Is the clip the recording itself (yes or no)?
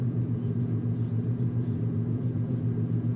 no